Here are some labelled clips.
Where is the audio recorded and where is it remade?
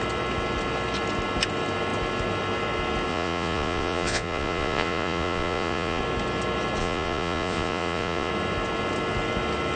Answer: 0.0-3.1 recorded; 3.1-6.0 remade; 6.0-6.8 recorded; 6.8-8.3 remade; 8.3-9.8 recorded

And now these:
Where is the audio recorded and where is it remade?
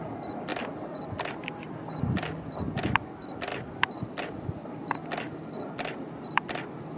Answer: 0.0-7.0 recorded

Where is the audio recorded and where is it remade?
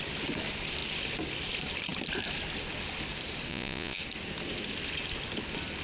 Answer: 0.0-3.5 recorded; 3.5-4.0 remade; 4.0-5.8 recorded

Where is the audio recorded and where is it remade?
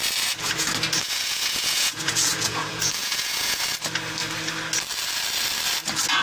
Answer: 0.0-1.0 recorded; 1.0-3.6 remade; 3.6-6.2 recorded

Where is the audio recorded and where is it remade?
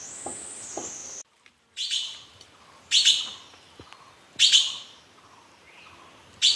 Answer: 0.0-6.6 recorded